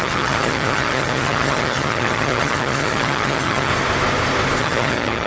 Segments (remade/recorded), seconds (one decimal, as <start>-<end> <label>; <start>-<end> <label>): 0.0-3.7 remade; 3.7-4.6 recorded; 4.6-5.3 remade